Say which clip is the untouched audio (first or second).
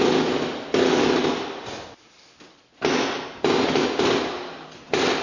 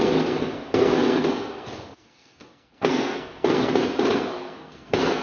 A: first